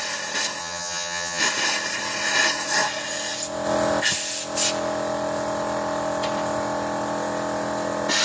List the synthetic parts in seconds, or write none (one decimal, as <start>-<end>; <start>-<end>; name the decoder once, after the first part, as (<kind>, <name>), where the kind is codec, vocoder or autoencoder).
0.6-1.4 (vocoder, HiFi-GAN)